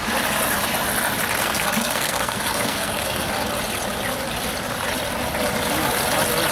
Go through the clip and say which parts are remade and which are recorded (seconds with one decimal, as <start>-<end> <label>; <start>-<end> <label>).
0.0-1.4 recorded; 1.4-3.3 remade; 3.3-6.5 recorded